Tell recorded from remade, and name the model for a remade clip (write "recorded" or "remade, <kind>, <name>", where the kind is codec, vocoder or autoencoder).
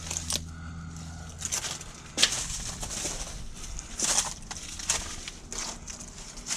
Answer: recorded